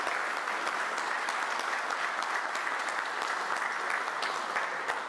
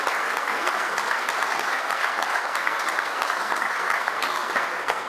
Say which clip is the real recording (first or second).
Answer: first